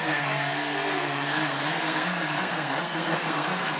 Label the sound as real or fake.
fake